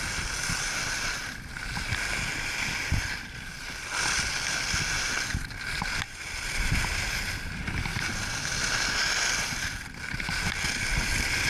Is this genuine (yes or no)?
yes